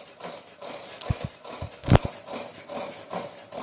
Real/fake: real